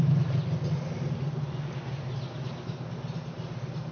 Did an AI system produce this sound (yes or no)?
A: no